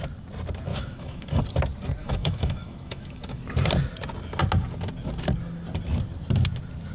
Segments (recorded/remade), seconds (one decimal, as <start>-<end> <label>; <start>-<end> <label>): 0.0-0.7 recorded; 0.7-1.4 remade; 1.4-2.0 recorded; 2.0-3.4 remade; 3.4-6.9 recorded